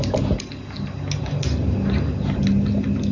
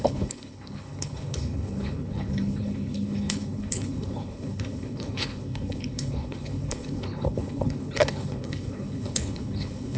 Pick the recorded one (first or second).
first